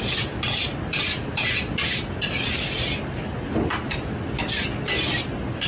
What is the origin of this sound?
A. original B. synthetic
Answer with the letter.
A